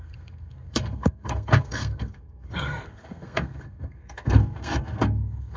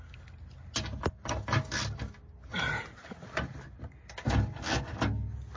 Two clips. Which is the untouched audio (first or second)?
second